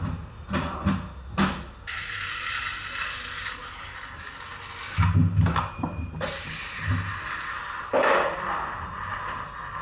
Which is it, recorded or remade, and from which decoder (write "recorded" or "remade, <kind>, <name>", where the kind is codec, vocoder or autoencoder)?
recorded